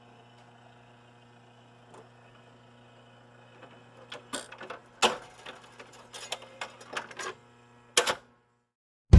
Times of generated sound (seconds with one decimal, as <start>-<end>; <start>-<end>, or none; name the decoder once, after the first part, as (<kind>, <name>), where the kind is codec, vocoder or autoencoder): none